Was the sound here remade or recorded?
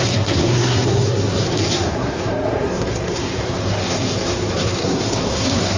remade